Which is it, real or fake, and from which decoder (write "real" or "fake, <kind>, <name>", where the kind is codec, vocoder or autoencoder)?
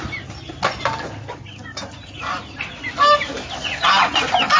real